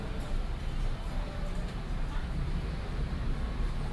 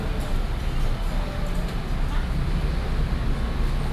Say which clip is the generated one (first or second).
first